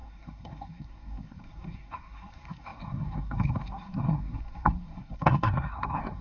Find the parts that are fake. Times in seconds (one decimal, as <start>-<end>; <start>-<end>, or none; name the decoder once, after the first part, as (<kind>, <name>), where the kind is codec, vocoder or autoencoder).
0.0-6.2 (codec, SNAC)